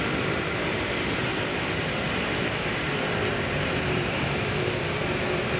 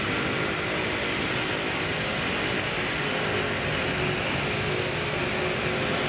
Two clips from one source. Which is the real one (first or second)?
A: second